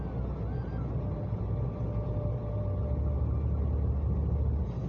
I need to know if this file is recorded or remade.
recorded